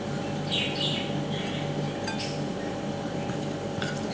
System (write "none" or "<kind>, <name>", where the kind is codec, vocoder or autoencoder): none